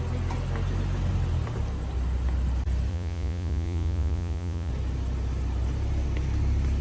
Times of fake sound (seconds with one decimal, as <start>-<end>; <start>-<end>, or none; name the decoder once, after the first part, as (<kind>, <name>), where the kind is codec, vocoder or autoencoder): 2.9-4.7 (vocoder, Vocos)